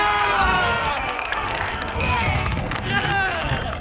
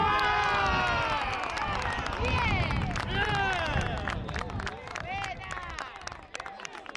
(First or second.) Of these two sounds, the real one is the second